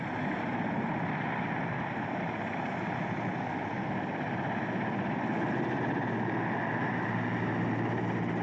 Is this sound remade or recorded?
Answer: recorded